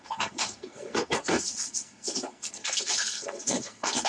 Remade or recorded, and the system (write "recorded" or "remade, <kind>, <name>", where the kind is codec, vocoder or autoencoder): remade, codec, SNAC